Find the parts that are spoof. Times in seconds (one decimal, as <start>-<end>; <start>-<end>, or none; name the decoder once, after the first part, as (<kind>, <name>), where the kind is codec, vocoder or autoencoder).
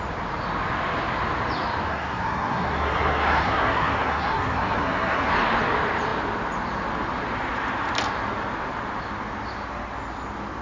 1.9-5.3 (codec, SNAC)